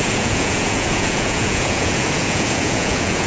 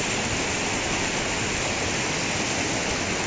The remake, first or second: first